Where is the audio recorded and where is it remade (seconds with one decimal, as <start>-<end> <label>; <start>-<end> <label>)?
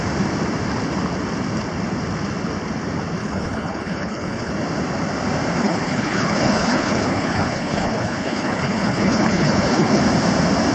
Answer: 0.0-3.2 recorded; 3.2-4.5 remade; 4.5-5.6 recorded; 5.6-10.0 remade; 10.0-10.7 recorded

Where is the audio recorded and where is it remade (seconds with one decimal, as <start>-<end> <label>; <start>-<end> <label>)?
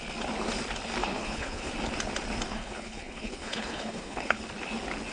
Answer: 0.0-1.0 recorded; 1.0-1.7 remade; 1.7-2.5 recorded; 2.5-4.4 remade; 4.4-5.1 recorded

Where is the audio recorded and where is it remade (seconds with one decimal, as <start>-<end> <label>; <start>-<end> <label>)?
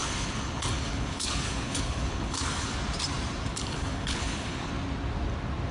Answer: 0.0-2.8 remade; 2.8-3.5 recorded; 3.5-4.7 remade; 4.7-5.7 recorded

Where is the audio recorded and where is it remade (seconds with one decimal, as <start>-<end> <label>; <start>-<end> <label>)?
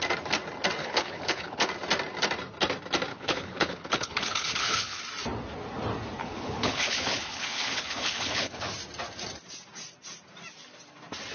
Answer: 0.0-0.8 recorded; 0.8-1.7 remade; 1.7-3.1 recorded; 3.1-5.0 remade; 5.0-6.2 recorded; 6.2-8.7 remade; 8.7-11.3 recorded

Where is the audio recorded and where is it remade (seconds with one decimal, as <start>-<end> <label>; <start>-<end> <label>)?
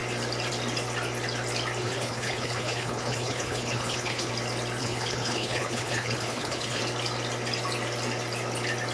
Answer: 0.0-1.8 recorded; 1.8-4.3 remade; 4.3-4.8 recorded; 4.8-6.8 remade; 6.8-8.9 recorded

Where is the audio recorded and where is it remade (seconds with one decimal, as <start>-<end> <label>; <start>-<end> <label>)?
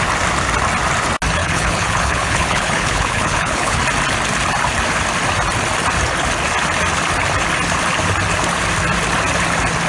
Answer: 0.0-1.4 recorded; 1.4-3.8 remade; 3.8-9.9 recorded